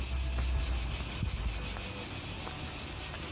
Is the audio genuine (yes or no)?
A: yes